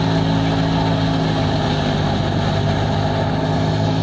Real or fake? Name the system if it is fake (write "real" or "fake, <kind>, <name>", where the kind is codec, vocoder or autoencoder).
real